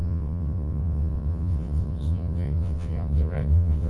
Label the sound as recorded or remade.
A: remade